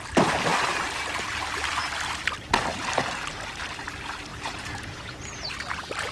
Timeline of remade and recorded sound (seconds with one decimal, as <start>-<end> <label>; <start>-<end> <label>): 0.0-4.3 recorded; 4.3-5.5 remade; 5.5-6.1 recorded